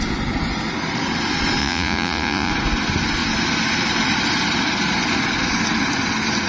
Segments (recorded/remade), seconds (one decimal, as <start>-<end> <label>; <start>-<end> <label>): 0.0-1.6 recorded; 1.6-2.5 remade; 2.5-6.5 recorded